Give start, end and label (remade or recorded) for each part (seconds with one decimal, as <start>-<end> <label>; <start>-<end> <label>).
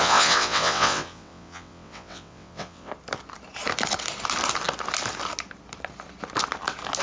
0.0-2.9 remade; 2.9-7.0 recorded